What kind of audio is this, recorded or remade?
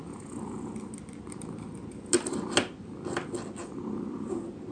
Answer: recorded